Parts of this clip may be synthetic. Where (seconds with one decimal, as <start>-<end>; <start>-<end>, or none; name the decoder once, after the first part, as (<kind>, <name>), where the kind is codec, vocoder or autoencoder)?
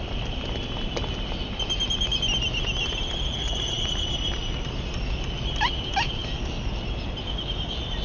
3.3-3.9 (vocoder, Vocos)